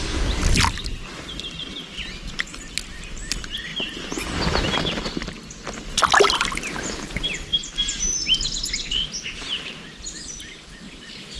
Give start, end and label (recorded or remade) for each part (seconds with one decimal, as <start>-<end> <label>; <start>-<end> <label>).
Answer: 0.0-11.4 recorded